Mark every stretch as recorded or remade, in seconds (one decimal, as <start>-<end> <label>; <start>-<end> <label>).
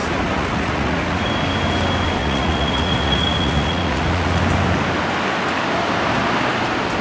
0.0-1.2 remade; 1.2-2.2 recorded; 2.2-4.4 remade; 4.4-7.0 recorded